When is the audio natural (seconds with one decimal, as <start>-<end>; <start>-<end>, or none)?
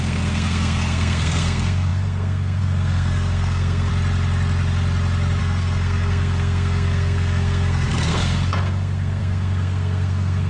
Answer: 3.9-5.4